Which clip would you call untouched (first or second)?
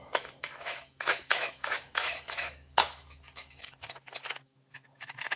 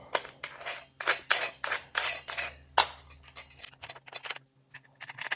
second